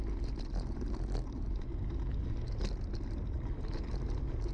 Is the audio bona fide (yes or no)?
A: yes